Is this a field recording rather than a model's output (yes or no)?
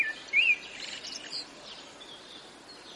yes